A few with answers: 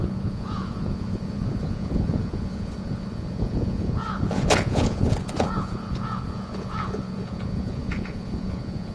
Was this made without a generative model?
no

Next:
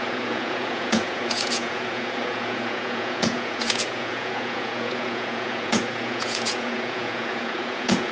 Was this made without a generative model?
no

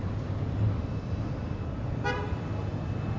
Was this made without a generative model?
yes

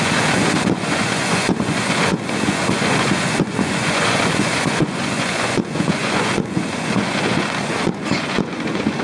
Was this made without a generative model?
no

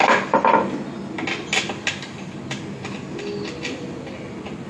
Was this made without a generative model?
yes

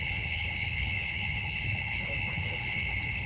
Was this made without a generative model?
no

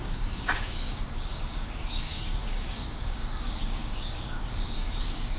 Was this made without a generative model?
no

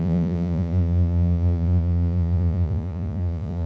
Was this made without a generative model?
no